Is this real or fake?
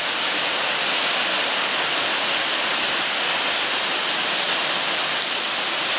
real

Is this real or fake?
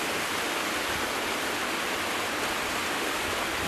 real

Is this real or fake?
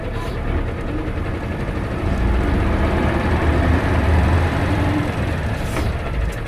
fake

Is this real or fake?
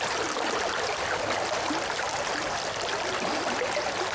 real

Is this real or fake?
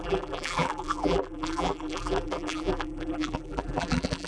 fake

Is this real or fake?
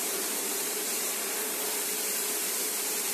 fake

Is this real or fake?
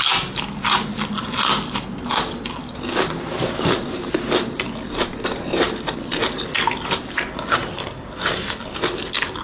real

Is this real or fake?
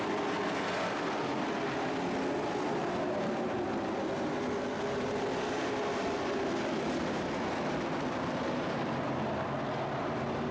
real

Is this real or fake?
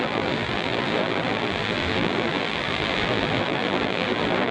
fake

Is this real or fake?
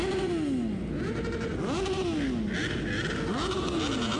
real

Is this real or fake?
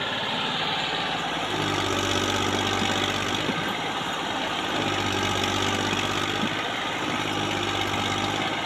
real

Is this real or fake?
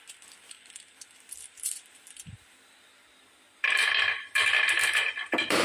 fake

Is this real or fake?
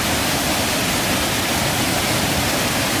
real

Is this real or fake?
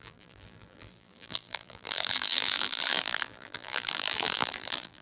fake